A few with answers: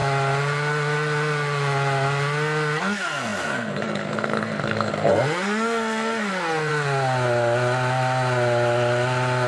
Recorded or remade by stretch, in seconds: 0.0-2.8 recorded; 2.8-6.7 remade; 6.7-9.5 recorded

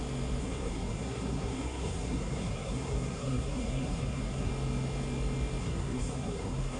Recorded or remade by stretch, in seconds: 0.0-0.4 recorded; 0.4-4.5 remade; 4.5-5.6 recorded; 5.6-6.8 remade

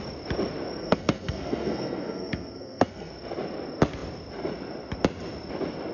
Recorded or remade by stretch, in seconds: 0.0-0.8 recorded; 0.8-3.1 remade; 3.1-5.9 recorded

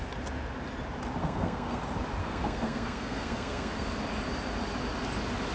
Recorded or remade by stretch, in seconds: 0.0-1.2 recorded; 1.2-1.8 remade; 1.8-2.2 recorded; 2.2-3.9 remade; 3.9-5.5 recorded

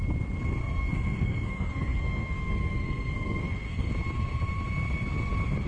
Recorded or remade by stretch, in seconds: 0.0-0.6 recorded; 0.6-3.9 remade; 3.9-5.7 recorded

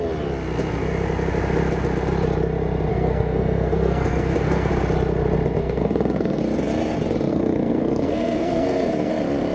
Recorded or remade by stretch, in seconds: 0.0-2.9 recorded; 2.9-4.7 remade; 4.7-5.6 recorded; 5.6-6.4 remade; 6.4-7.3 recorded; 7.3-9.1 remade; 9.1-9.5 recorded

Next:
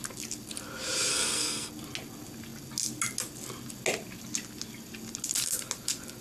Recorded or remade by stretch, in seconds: 0.0-1.1 recorded; 1.1-1.7 remade; 1.7-6.2 recorded